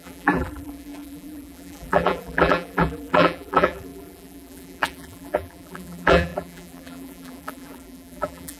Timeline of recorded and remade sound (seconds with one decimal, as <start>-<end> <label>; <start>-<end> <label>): 0.0-8.6 remade